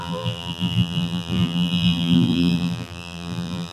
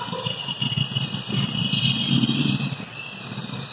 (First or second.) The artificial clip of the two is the first